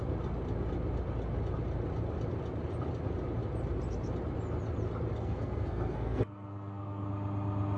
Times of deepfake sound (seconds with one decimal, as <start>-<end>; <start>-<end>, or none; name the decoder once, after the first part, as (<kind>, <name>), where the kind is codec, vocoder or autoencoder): 5.2-7.1 (codec, SNAC)